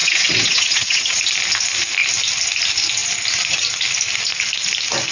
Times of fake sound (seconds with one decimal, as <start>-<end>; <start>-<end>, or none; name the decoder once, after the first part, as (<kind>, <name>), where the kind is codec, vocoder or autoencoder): 0.0-1.2 (vocoder, WaveNeXt)